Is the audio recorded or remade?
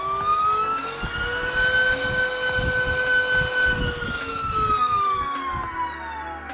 recorded